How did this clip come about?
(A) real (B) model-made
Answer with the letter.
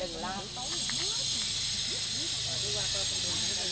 A